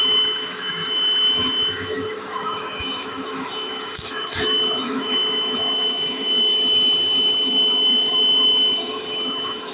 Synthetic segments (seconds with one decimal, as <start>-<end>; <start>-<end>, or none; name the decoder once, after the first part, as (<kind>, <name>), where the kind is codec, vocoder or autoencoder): 0.0-6.5 (autoencoder, DAC-VAE); 7.3-9.7